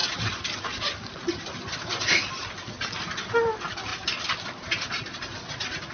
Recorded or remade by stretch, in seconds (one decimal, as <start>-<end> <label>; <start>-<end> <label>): 0.0-5.9 recorded